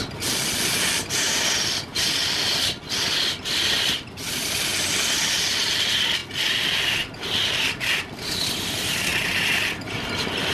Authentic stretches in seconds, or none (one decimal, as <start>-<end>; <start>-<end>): 0.0-1.9; 4.4-10.5